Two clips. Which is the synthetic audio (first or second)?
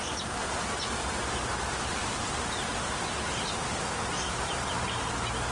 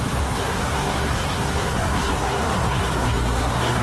second